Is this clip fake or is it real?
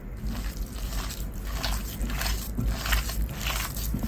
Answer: real